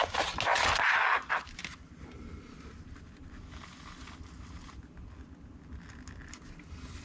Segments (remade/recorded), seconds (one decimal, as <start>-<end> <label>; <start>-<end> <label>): 0.0-1.0 recorded; 1.0-1.5 remade; 1.5-7.0 recorded